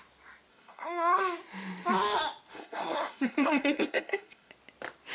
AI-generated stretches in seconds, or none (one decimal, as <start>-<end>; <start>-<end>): 0.5-1.2; 2.5-4.5